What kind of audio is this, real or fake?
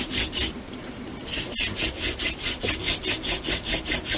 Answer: real